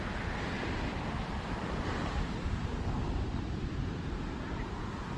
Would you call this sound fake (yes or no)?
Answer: no